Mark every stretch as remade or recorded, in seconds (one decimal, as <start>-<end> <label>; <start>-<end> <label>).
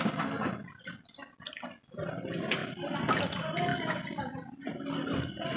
0.0-5.6 recorded